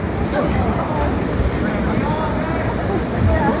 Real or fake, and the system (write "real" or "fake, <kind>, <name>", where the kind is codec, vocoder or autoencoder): real